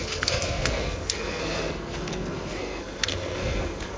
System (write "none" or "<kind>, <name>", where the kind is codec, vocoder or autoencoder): codec, SNAC